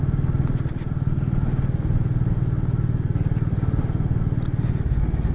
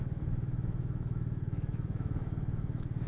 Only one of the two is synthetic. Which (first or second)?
second